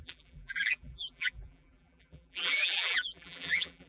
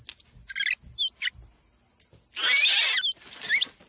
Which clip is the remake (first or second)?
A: first